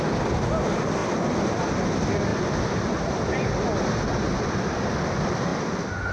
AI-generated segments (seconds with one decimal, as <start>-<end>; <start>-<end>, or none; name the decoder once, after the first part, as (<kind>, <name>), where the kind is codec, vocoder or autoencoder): none